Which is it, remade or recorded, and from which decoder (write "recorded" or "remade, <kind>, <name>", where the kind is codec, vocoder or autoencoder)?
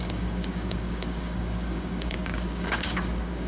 remade, codec, DAC